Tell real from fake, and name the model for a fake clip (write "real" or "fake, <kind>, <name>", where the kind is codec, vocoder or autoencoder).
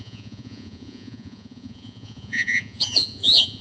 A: fake, vocoder, Vocos